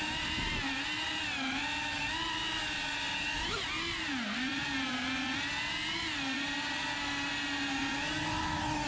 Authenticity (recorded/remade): recorded